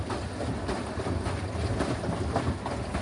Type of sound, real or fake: real